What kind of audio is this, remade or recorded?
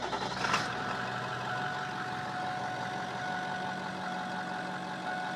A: recorded